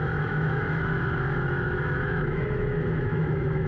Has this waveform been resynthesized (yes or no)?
yes